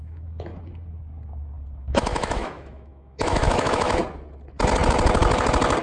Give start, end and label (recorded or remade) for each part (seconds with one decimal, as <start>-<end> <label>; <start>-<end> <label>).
0.0-0.5 remade; 0.5-1.8 recorded; 1.8-4.0 remade; 4.0-5.8 recorded